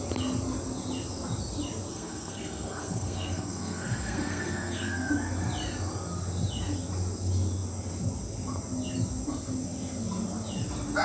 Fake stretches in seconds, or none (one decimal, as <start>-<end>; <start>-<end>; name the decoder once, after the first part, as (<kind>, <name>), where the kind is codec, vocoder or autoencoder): 1.9-5.1 (codec, SNAC)